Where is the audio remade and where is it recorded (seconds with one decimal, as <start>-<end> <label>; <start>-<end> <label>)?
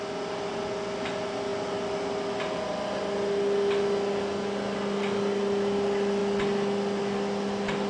0.0-7.9 recorded